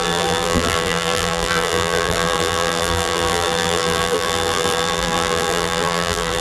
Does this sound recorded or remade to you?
remade